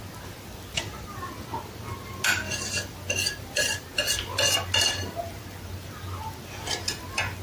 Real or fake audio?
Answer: real